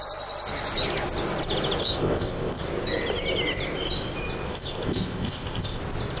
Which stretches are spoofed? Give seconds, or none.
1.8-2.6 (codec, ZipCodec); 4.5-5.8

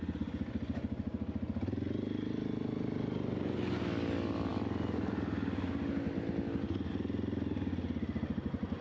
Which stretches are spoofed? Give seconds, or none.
none

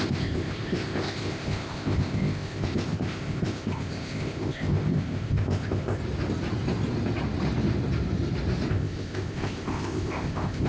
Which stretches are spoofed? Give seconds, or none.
0.0-6.0 (codec, ZipCodec); 8.7-10.7